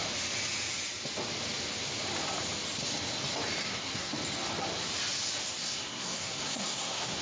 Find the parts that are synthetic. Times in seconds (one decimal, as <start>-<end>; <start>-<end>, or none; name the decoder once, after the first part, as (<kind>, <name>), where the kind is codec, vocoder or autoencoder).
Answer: 3.6-4.1 (codec, SNAC); 5.6-7.2